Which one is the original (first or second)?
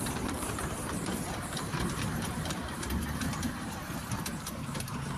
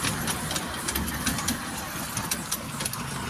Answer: second